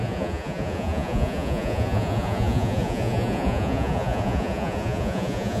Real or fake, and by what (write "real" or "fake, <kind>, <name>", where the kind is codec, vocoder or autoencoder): fake, vocoder, Vocos